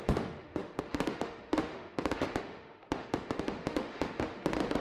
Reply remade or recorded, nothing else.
remade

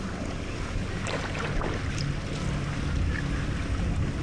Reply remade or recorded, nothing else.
recorded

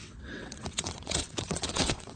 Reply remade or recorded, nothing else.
remade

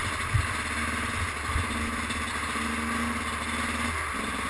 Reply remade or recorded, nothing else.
recorded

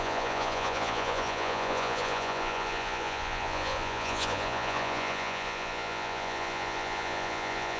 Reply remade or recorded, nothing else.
remade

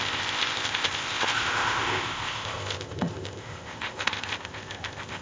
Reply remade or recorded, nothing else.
remade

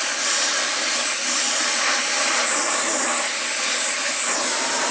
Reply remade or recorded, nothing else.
remade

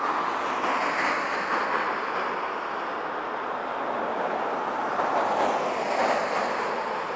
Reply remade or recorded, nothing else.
recorded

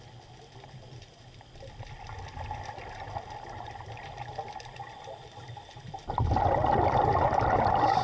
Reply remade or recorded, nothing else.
recorded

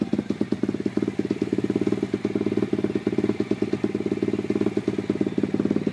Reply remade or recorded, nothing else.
recorded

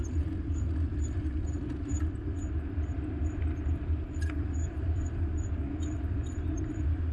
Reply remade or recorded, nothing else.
remade